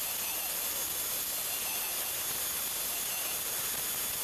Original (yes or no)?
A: yes